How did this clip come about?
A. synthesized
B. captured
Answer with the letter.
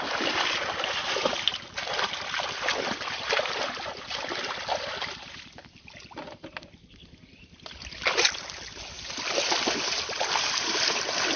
B